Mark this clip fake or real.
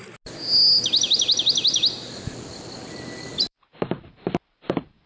real